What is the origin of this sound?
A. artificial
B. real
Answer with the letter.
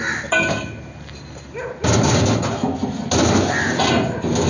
B